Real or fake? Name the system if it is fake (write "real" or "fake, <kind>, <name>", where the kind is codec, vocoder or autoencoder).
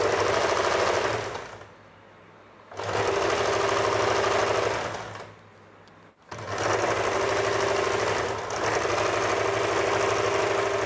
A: real